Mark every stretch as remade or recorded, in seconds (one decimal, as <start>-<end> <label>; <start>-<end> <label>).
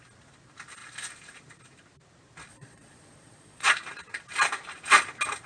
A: 0.0-2.5 recorded; 2.5-3.7 remade; 3.7-5.5 recorded